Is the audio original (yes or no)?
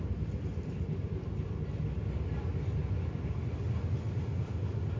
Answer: yes